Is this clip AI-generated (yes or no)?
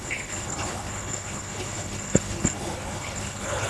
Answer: yes